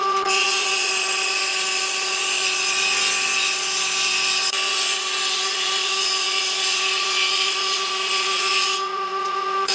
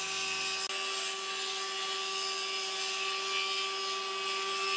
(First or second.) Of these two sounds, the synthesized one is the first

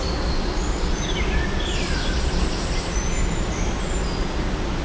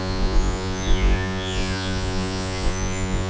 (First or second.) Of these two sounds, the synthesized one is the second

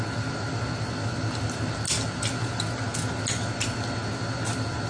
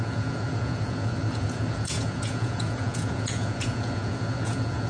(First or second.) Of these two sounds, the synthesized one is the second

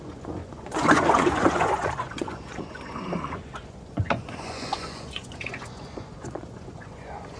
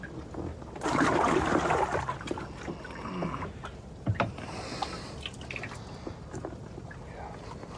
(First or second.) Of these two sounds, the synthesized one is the first